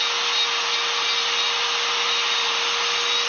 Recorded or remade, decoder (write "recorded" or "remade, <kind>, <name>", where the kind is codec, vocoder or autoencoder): recorded